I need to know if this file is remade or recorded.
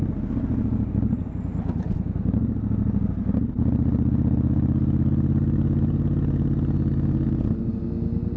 recorded